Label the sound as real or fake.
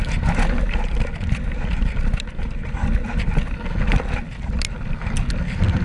real